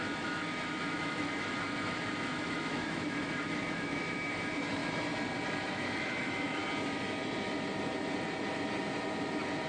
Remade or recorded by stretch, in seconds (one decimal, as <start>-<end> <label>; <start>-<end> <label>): 0.0-4.8 remade; 4.8-5.7 recorded; 5.7-6.6 remade; 6.6-9.7 recorded